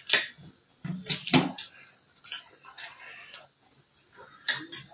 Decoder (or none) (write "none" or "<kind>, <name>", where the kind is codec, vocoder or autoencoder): none